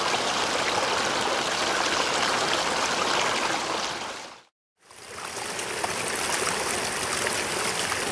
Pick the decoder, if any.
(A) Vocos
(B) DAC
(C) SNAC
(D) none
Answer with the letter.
D